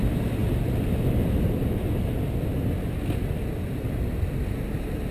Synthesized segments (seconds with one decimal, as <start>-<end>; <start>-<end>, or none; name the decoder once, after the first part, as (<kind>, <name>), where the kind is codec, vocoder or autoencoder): none